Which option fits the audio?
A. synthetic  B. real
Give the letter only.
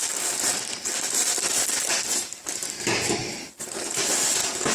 A